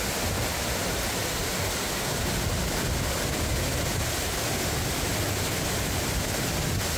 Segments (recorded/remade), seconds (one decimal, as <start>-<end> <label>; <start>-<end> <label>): 0.0-7.0 recorded